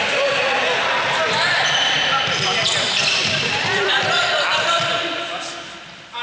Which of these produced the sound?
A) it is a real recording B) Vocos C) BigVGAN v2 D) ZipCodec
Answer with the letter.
C